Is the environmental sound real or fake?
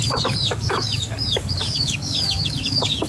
fake